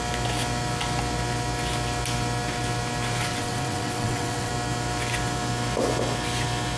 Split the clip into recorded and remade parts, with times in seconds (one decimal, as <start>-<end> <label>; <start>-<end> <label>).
0.0-3.3 recorded; 3.3-4.5 remade; 4.5-6.8 recorded